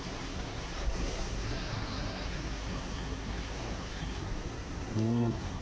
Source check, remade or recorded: remade